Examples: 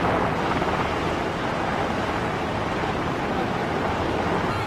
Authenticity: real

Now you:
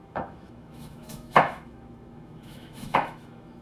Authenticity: fake